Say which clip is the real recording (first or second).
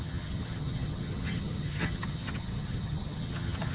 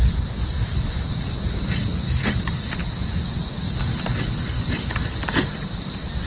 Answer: second